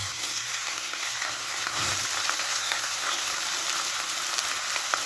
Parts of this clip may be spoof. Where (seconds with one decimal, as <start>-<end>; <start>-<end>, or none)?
0.0-1.9; 2.4-3.3